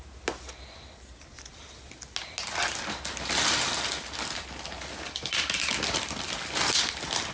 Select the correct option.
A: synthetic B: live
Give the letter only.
B